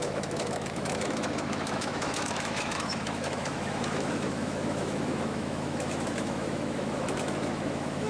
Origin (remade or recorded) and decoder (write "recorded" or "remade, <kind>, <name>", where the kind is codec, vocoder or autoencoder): remade, autoencoder, DAC-VAE